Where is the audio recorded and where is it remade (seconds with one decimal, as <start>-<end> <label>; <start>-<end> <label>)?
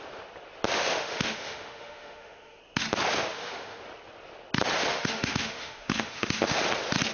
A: 0.0-0.7 recorded; 0.7-2.6 remade; 2.6-3.3 recorded; 3.3-3.8 remade; 3.8-4.9 recorded; 4.9-6.6 remade; 6.6-7.1 recorded